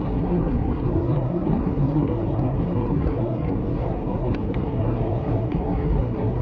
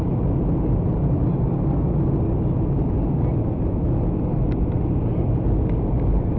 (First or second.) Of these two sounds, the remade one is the first